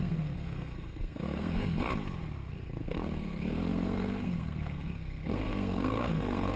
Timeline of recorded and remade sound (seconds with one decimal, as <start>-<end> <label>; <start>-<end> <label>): 0.0-1.9 remade; 1.9-2.5 recorded; 2.5-6.6 remade